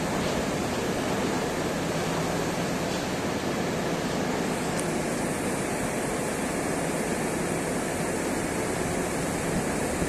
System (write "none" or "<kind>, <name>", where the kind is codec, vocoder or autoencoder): none